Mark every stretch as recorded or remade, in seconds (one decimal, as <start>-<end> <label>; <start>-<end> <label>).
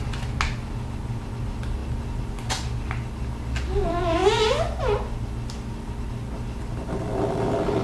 0.0-7.8 recorded